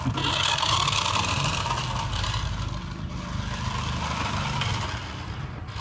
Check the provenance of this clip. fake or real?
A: real